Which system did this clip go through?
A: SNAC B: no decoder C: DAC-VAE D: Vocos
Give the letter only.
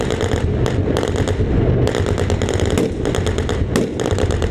B